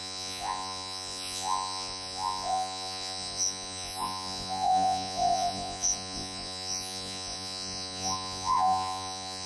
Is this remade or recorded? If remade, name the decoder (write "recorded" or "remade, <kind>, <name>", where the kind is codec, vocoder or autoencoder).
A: remade, vocoder, Vocos